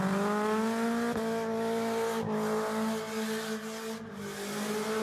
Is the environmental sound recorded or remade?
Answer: recorded